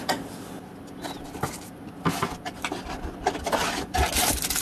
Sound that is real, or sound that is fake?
real